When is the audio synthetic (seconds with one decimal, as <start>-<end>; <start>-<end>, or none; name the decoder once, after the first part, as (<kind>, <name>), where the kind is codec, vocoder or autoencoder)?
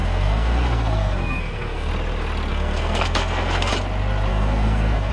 0.0-1.9 (codec, SNAC); 2.5-3.7; 4.3-5.1